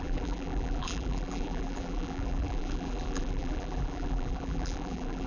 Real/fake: fake